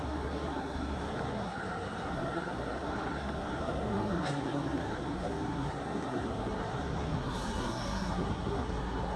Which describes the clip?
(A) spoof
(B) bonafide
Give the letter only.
A